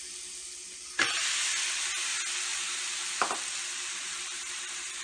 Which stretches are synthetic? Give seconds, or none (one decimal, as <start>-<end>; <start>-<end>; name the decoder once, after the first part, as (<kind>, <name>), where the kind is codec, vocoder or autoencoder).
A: none